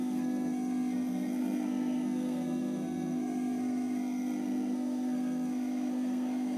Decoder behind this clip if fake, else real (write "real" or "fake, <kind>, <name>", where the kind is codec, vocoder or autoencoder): fake, codec, SNAC